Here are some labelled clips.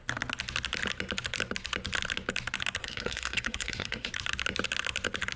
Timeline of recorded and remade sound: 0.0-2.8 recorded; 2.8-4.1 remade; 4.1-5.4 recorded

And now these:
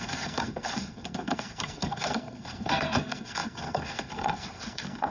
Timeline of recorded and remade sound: 0.0-5.1 remade

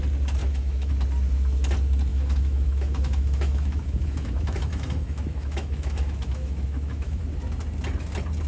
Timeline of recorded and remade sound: 0.0-0.4 recorded; 0.4-0.9 remade; 0.9-2.1 recorded; 2.1-7.2 remade; 7.2-8.5 recorded

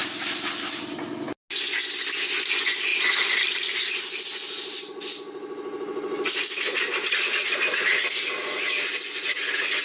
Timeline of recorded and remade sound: 0.0-9.8 recorded

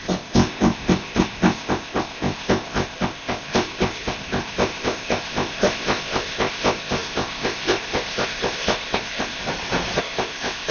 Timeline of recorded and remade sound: 0.0-9.4 remade; 9.4-10.0 recorded; 10.0-10.7 remade